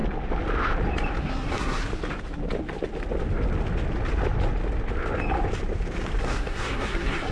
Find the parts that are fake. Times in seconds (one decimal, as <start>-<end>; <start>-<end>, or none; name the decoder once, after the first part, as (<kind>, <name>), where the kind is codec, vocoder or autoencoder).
1.2-1.8 (codec, SNAC); 6.2-7.3